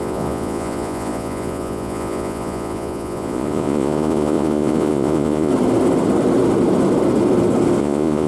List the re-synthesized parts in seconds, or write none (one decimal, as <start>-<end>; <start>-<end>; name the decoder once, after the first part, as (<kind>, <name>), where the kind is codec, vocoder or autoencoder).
0.0-5.5 (vocoder, Vocos); 7.8-8.3